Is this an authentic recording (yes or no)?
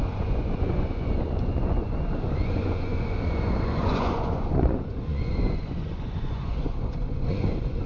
no